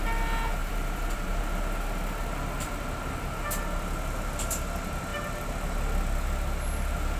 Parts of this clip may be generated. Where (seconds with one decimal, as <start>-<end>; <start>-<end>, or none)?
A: 0.6-1.4